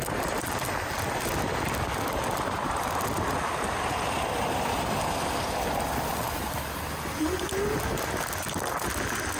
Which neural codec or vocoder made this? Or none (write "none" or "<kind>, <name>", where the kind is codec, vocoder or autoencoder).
none